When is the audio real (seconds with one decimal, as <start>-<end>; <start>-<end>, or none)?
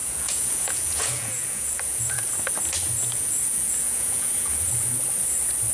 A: 2.2-3.0; 4.7-5.7